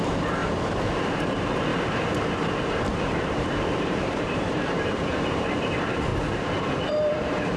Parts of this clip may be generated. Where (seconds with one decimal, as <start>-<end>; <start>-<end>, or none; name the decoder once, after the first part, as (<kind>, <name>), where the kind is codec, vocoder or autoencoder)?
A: 0.0-0.4 (vocoder, BigVGAN v2); 1.0-6.1; 6.9-7.6